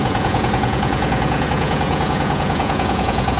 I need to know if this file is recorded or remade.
remade